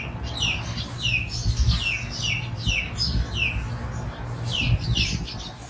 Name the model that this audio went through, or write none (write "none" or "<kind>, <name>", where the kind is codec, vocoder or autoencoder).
none